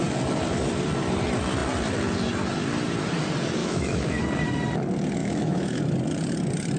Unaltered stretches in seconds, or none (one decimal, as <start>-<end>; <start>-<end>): 0.0-3.6; 4.2-5.2; 5.8-6.8